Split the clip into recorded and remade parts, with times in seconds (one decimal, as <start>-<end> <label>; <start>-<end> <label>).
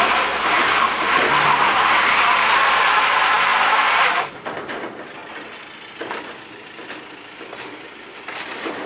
0.0-8.9 recorded